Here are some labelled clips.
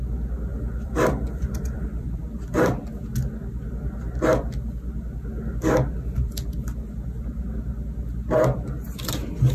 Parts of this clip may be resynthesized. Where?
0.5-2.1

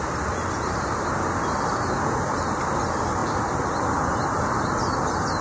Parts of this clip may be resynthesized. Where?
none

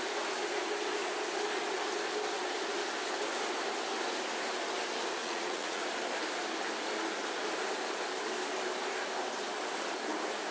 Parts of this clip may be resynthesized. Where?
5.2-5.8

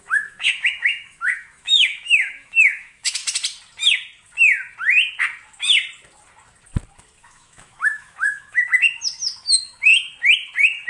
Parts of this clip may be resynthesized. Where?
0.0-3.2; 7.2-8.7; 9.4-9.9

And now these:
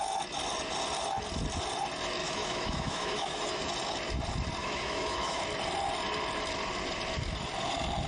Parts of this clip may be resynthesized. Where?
2.2-3.6; 4.6-5.4

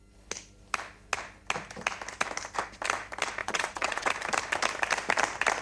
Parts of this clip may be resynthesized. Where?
3.4-4.1

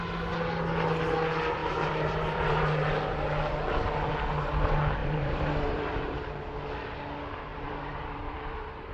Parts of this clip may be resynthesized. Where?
1.6-3.2; 5.0-6.2; 7.5-8.9

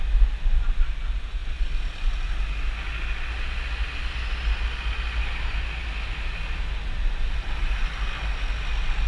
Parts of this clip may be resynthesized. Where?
1.4-2.0